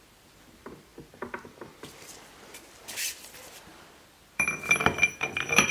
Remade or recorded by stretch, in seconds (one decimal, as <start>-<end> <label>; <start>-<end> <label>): 0.0-0.9 remade; 0.9-1.7 recorded; 1.7-5.7 remade